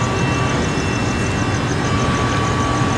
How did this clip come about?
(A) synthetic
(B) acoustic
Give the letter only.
B